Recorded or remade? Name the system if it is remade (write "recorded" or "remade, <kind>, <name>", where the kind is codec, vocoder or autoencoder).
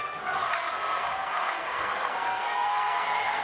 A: remade, codec, SNAC